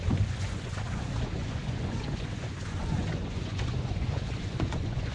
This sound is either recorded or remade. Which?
remade